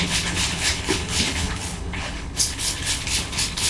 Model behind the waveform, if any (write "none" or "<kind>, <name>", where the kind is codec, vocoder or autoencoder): codec, HILCodec